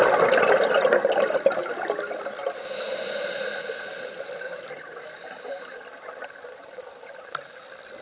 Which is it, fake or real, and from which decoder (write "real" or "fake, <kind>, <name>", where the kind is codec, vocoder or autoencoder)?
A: real